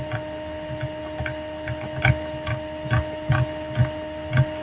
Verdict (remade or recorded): recorded